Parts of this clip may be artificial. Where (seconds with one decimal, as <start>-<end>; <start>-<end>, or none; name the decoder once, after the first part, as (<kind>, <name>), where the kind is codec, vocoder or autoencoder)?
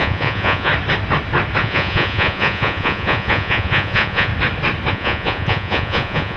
0.0-0.7 (vocoder, Vocos); 1.6-4.3; 4.9-6.4